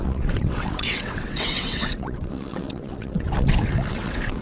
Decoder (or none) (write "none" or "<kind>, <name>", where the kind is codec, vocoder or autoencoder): vocoder, WaveNeXt